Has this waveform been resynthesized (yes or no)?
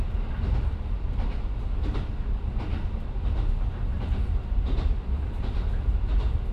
no